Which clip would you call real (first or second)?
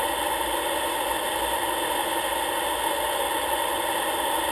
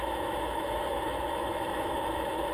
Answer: first